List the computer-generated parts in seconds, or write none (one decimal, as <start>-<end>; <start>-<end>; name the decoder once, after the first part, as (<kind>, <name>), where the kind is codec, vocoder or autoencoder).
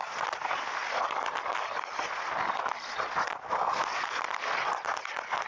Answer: none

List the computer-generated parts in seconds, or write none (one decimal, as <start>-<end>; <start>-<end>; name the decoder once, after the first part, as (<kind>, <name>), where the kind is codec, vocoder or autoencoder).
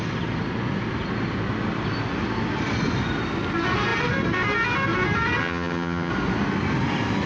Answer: 5.4-6.1 (vocoder, HiFi-GAN)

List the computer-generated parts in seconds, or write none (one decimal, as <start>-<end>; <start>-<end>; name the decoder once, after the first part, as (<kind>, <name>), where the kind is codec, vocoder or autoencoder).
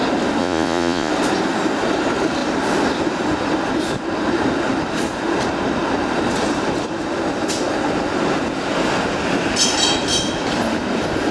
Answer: 0.4-1.1 (vocoder, Vocos)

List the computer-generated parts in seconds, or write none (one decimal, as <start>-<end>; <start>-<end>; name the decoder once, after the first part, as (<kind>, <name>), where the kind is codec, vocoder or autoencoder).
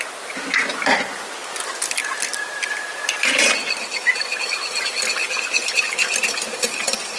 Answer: none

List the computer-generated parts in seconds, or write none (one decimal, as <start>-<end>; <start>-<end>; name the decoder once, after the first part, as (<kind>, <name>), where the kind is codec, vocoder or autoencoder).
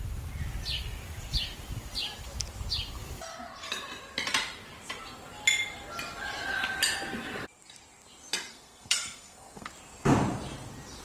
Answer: 8.5-9.7 (codec, SNAC)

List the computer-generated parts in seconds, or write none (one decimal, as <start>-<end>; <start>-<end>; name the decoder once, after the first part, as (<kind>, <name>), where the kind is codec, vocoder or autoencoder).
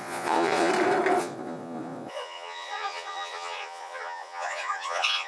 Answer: 0.0-0.7 (vocoder, Vocos); 1.2-5.3